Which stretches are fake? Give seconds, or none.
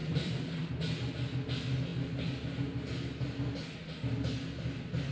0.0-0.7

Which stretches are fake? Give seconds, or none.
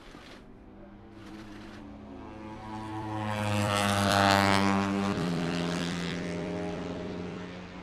1.2-1.8; 2.9-7.8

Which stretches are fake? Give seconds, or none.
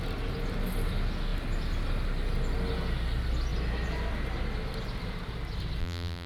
5.8-6.3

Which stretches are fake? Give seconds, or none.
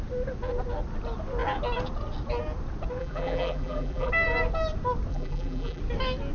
3.0-4.1; 5.1-5.8